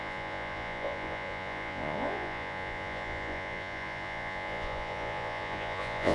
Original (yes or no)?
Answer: no